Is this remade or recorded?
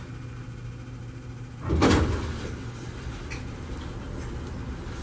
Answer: recorded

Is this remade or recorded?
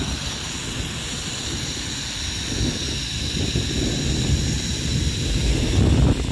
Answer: recorded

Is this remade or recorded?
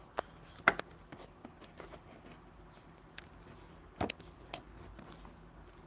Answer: recorded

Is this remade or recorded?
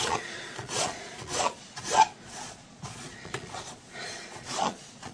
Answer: remade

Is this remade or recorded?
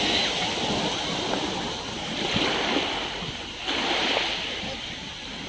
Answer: recorded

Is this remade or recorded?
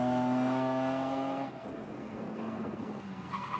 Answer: remade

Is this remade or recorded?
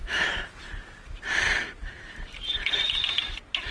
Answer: remade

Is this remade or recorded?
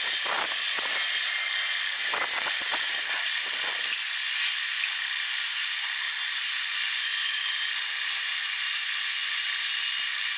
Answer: recorded